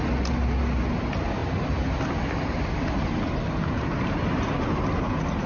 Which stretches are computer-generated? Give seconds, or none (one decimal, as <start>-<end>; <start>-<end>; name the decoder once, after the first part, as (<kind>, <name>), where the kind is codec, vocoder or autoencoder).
none